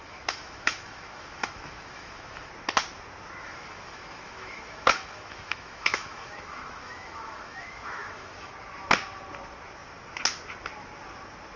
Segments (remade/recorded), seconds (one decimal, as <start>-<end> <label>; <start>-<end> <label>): 0.0-2.5 remade; 2.5-3.4 recorded; 3.4-8.5 remade; 8.5-11.6 recorded